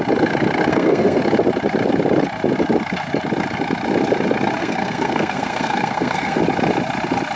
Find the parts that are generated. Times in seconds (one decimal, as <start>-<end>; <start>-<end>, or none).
0.7-1.2; 4.6-6.4